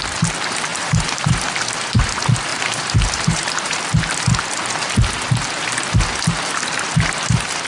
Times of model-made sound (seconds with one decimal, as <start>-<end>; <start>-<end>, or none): 0.7-1.5; 2.5-3.8